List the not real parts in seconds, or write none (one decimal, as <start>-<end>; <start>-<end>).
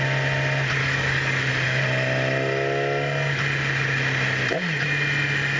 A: 0.8-1.5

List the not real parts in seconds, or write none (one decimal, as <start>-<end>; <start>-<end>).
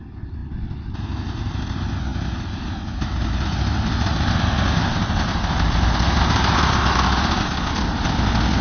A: none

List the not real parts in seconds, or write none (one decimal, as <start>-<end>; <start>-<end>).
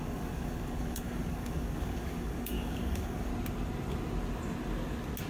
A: 0.0-3.3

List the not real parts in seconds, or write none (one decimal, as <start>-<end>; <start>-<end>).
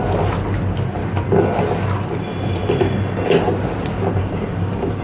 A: 4.2-5.0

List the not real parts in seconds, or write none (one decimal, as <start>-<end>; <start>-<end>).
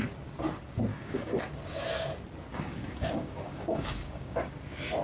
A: 0.9-1.5; 2.5-4.5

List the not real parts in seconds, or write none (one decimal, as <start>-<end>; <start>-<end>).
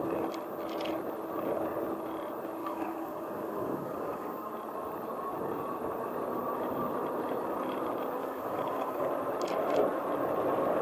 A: 2.6-4.5; 8.2-9.1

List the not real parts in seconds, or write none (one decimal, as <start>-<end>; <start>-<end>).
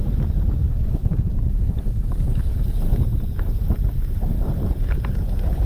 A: 0.6-2.4